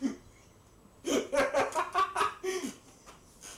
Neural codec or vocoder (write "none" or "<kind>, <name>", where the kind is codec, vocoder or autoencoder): none